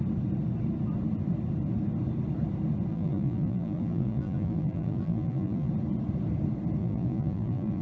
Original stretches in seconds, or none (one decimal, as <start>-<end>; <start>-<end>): 0.0-2.9; 5.7-6.8